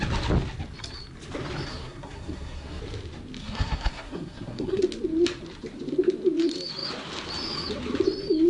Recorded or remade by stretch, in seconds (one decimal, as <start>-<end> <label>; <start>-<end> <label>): 0.0-1.7 recorded; 1.7-2.8 remade; 2.8-3.4 recorded; 3.4-4.8 remade; 4.8-8.5 recorded